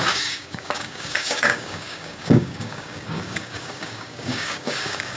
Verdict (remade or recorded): remade